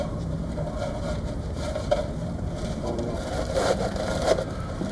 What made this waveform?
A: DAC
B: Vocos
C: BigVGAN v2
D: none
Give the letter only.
C